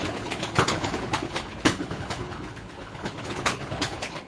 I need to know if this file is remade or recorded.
remade